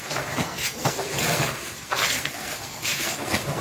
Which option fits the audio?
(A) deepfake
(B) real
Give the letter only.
A